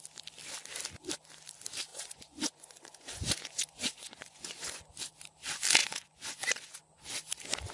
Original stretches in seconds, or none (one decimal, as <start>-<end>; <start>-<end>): 0.0-1.9; 4.8-5.8; 6.8-7.7